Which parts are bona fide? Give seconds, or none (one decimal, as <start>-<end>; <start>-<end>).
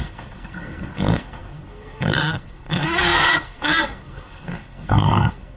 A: none